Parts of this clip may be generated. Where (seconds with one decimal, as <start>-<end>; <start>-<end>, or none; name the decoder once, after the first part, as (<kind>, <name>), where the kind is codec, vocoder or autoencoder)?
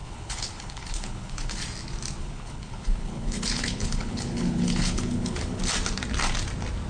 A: 0.0-1.6 (codec, HILCodec); 2.2-5.6